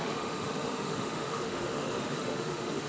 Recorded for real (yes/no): no